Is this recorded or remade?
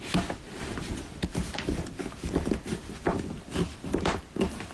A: recorded